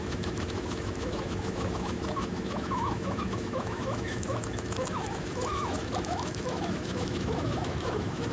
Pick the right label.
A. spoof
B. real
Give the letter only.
A